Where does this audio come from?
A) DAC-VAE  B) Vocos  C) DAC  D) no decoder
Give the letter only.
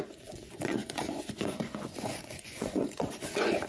B